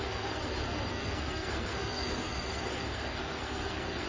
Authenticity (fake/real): fake